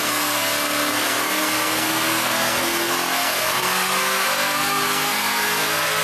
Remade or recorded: remade